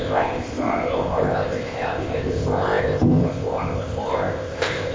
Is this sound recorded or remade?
remade